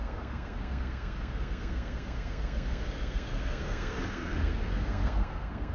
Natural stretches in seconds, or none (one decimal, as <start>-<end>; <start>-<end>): none